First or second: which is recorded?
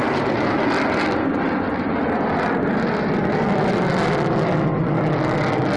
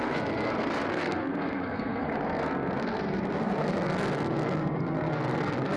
first